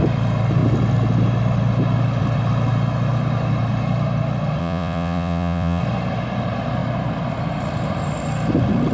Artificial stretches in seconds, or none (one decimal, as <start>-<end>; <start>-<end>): 4.6-5.8